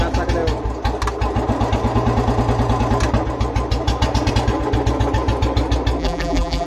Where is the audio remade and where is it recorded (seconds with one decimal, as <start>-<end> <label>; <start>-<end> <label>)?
0.0-6.0 recorded; 6.0-6.7 remade